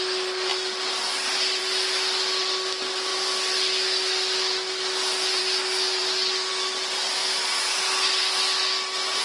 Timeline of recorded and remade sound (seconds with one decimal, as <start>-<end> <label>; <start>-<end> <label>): 0.0-9.2 recorded